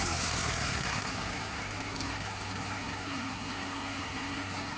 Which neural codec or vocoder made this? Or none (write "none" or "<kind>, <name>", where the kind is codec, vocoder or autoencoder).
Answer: codec, SNAC